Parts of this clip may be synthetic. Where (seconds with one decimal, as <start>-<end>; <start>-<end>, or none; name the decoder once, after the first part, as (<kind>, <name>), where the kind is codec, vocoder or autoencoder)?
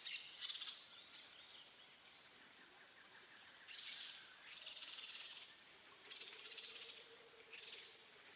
1.5-2.2 (vocoder, BigVGAN v2); 3.2-6.7